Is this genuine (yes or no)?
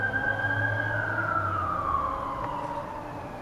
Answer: yes